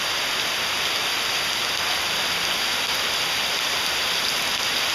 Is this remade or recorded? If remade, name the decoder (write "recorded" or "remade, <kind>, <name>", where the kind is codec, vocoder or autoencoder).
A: recorded